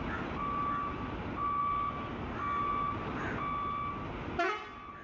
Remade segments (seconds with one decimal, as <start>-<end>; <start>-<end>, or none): none